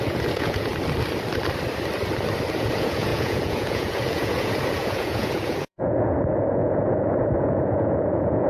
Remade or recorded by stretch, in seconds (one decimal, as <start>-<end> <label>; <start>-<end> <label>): 0.0-0.7 remade; 0.7-2.5 recorded; 2.5-8.5 remade